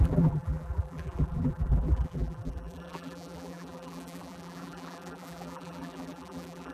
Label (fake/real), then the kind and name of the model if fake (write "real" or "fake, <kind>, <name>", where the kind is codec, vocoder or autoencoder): fake, vocoder, BigVGAN v2